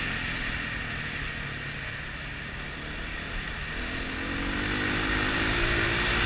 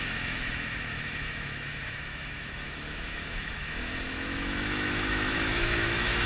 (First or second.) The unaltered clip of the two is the first